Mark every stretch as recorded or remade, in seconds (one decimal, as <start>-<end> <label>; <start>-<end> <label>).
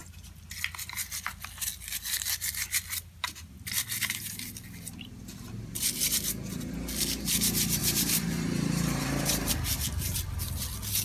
0.0-7.8 recorded; 7.8-9.5 remade; 9.5-11.0 recorded